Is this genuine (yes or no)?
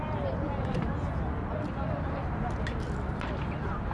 yes